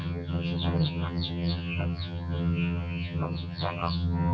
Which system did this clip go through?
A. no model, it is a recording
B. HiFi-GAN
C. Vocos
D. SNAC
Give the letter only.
B